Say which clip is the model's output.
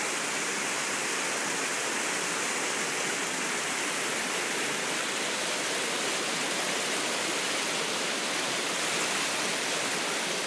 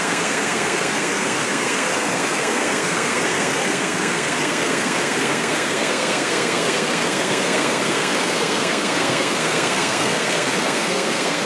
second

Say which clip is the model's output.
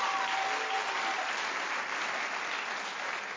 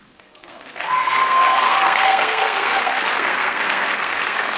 second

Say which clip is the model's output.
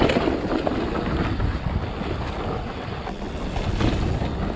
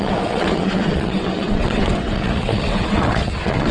second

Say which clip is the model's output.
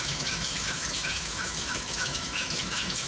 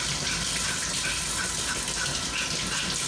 first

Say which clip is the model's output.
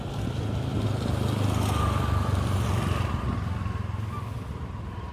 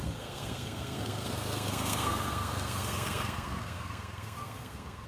second